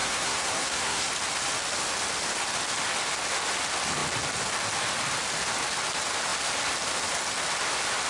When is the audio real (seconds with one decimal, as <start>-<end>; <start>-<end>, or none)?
1.1-8.1